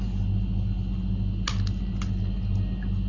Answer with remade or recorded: recorded